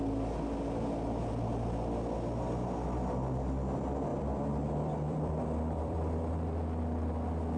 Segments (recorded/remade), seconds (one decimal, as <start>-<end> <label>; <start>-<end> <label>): 0.0-4.1 recorded; 4.1-6.3 remade; 6.3-7.6 recorded